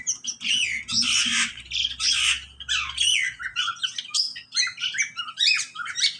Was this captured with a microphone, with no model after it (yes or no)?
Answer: yes